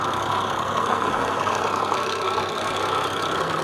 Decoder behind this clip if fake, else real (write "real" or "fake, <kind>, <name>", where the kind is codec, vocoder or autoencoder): fake, codec, SNAC